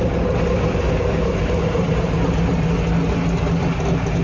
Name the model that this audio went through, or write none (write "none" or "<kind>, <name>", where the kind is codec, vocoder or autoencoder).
none